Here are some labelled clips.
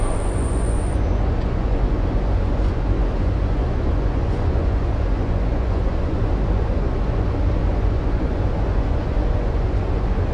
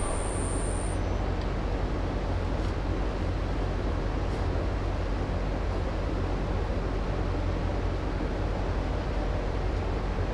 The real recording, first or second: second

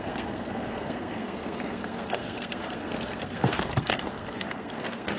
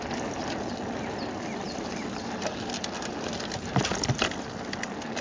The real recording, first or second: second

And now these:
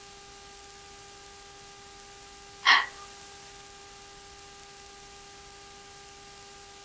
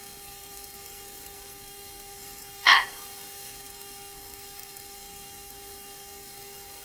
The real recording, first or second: first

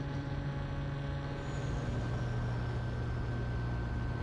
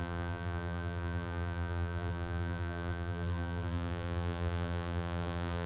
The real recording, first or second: first